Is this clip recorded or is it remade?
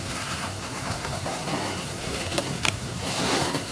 remade